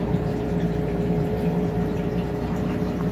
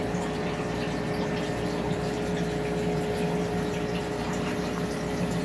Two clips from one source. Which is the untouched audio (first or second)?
second